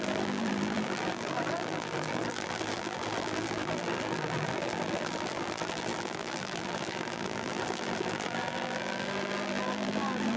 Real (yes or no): no